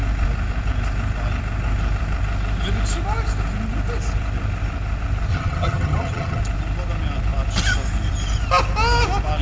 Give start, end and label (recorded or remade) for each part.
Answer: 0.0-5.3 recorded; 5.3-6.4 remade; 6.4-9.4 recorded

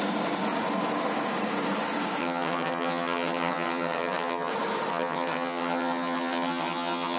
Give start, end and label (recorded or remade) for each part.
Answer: 0.0-2.2 recorded; 2.2-4.5 remade; 4.5-4.9 recorded; 4.9-7.2 remade

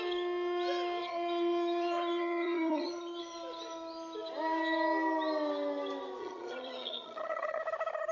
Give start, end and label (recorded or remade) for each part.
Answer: 0.0-1.0 recorded; 1.0-3.2 remade; 3.2-6.2 recorded; 6.2-7.6 remade; 7.6-8.1 recorded

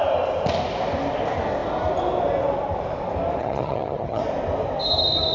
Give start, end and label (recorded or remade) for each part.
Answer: 0.0-3.4 recorded; 3.4-4.2 remade; 4.2-5.3 recorded

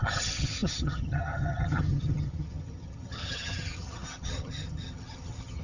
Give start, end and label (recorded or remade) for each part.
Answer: 0.0-5.6 remade

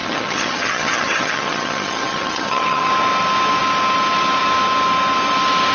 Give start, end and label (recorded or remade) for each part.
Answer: 0.0-2.9 remade; 2.9-5.7 recorded